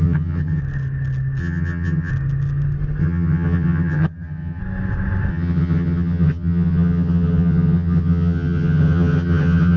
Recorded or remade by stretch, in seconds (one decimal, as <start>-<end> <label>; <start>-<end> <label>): 0.0-0.6 remade; 0.6-1.4 recorded; 1.4-2.1 remade; 2.1-3.0 recorded; 3.0-4.6 remade; 4.6-5.3 recorded; 5.3-9.8 remade